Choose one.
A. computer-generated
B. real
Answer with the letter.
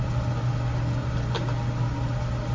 B